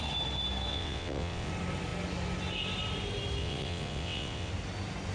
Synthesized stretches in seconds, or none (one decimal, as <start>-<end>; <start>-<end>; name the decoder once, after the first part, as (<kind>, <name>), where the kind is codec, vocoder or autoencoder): 0.7-1.5 (vocoder, WaveNeXt); 3.4-4.5